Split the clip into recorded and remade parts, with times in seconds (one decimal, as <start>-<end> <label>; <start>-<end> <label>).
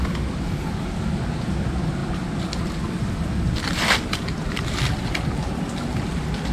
0.0-6.5 recorded